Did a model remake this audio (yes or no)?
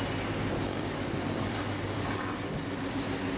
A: no